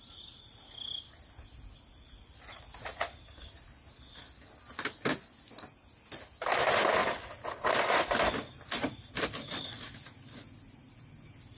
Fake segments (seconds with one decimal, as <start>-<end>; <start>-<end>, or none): none